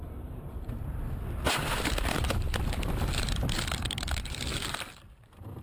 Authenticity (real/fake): fake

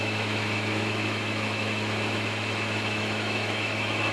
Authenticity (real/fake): fake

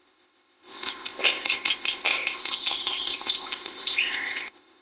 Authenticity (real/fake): fake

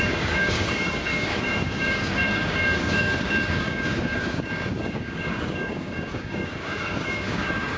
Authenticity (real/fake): fake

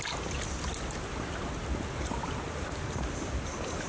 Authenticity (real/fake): real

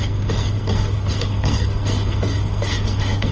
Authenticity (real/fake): fake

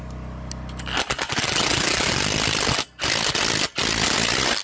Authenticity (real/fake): real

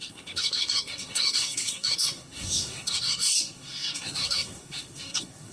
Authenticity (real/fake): fake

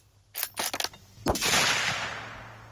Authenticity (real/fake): real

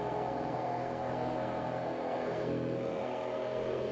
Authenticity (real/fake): fake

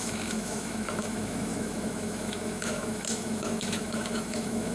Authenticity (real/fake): fake